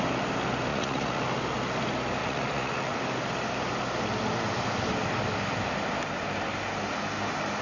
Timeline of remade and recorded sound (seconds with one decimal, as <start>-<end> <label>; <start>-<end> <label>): 0.0-0.7 recorded; 0.7-1.2 remade; 1.2-2.2 recorded; 2.2-3.0 remade; 3.0-7.6 recorded